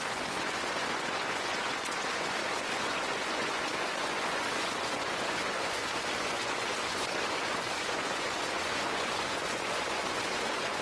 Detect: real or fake fake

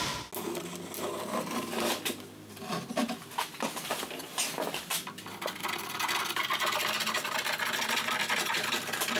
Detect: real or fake real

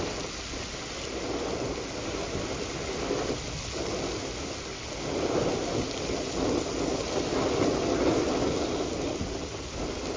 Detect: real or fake real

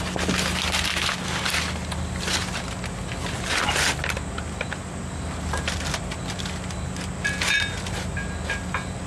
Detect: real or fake real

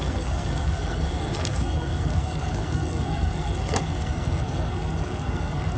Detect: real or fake fake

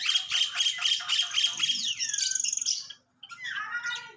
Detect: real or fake real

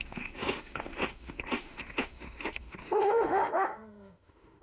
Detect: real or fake fake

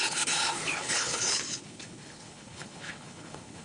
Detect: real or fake fake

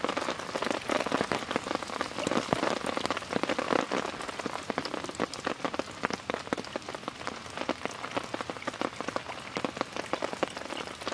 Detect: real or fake real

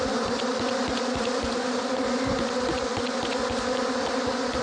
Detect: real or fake real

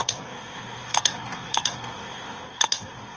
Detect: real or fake fake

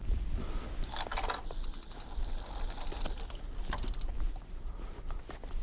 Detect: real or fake real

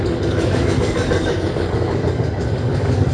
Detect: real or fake fake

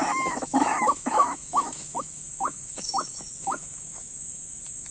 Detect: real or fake fake